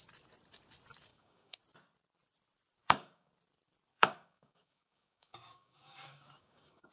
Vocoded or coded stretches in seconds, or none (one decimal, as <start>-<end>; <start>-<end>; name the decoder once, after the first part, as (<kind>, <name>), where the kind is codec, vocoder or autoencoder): 1.1-1.6 (codec, DAC); 2.8-3.3; 3.9-6.9